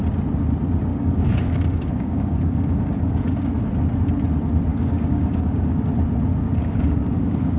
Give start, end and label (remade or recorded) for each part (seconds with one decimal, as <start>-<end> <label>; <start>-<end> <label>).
0.0-0.9 recorded; 0.9-3.5 remade; 3.5-4.7 recorded; 4.7-5.8 remade; 5.8-6.3 recorded; 6.3-7.6 remade